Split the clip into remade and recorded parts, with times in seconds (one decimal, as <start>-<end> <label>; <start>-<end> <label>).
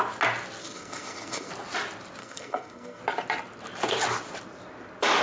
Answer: 0.0-0.6 recorded; 0.6-1.5 remade; 1.5-2.2 recorded; 2.2-3.0 remade; 3.0-5.2 recorded